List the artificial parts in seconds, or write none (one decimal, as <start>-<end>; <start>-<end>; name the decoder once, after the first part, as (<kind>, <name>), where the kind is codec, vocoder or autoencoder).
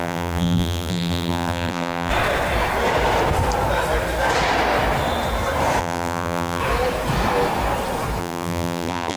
0.0-2.1 (vocoder, BigVGAN v2); 5.8-6.6; 8.2-9.2